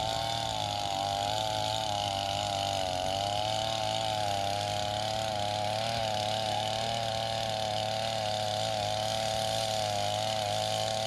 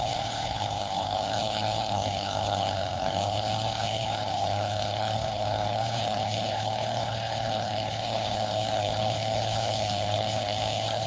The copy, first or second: second